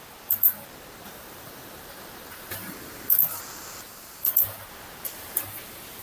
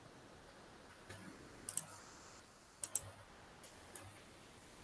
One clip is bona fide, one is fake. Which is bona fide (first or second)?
second